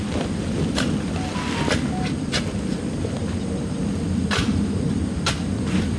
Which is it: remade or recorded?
remade